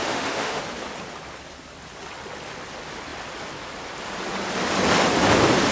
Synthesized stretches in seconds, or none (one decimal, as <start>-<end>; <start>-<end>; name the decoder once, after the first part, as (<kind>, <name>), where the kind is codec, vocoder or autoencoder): 0.0-0.6 (autoencoder, DAC-VAE)